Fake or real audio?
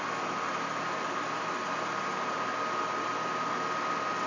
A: real